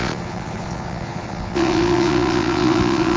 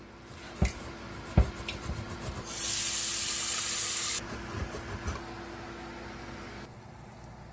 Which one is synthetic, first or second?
first